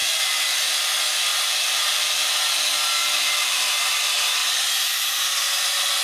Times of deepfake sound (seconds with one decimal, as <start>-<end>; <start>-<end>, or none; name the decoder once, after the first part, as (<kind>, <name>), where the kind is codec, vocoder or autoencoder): 0.0-0.9 (vocoder, BigVGAN v2); 1.3-2.4; 3.0-3.7